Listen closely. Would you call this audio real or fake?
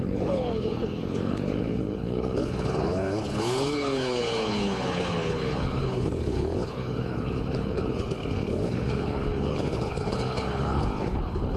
fake